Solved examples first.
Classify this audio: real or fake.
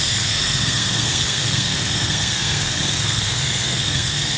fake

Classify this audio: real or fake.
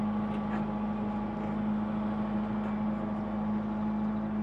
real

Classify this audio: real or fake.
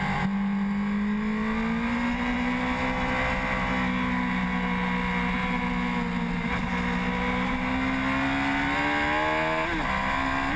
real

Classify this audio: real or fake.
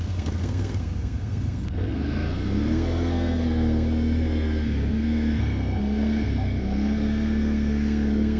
fake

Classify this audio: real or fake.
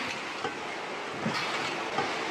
real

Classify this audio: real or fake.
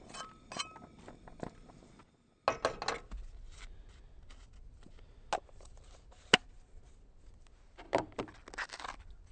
real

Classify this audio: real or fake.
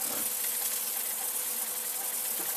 real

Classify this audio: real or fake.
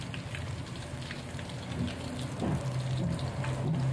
real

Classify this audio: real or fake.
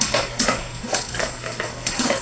fake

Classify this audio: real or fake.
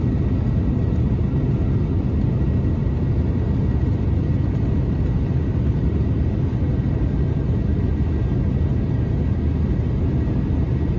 real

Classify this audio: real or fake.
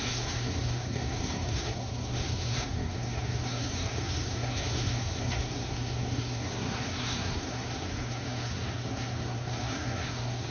fake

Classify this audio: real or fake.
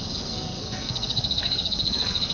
fake